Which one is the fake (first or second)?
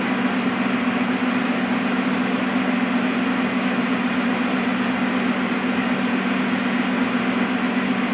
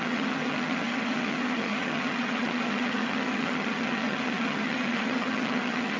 second